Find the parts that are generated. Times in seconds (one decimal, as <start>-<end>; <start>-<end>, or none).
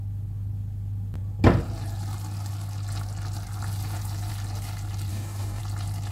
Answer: 5.1-5.6